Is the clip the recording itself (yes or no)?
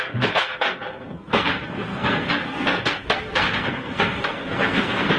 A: no